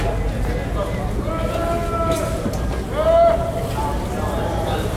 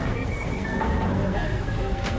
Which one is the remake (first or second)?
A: second